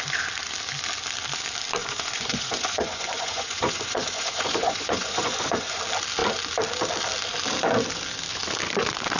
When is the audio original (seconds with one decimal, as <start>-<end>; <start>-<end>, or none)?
0.0-1.8; 5.8-9.2